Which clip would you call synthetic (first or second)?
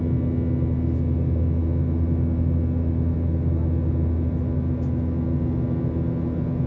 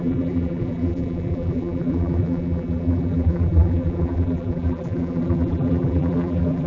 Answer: second